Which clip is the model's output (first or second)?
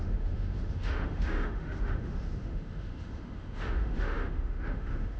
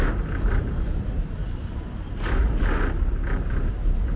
first